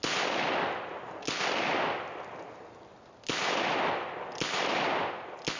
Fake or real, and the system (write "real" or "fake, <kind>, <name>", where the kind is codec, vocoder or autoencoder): real